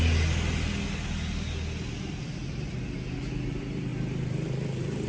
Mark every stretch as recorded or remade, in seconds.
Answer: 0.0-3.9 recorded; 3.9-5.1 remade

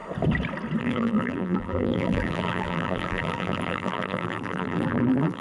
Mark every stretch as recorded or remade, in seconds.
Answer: 0.0-0.8 recorded; 0.8-5.4 remade